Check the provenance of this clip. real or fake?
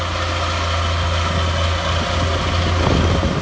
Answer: real